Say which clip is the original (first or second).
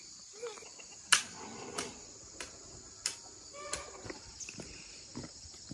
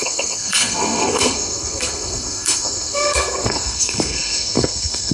first